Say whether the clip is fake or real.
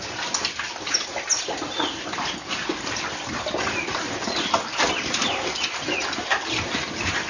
real